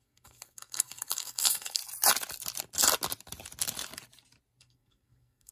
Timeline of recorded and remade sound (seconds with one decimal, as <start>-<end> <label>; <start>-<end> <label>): 0.0-1.8 remade; 1.8-4.6 recorded; 4.6-5.5 remade